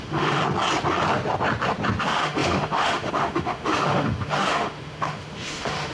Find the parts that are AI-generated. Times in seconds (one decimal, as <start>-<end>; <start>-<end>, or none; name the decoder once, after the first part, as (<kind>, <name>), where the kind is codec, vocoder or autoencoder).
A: 0.0-0.4 (autoencoder, DAC-VAE); 2.0-5.9